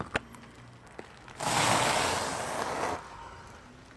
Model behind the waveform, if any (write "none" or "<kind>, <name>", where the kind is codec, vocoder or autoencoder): none